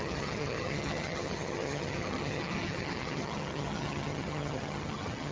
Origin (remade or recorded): remade